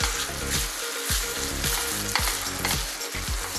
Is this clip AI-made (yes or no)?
no